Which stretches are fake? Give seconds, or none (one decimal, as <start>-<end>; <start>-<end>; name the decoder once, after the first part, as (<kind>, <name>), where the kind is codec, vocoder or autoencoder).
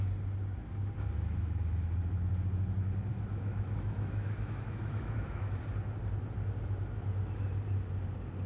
3.1-5.6 (autoencoder, DAC-VAE)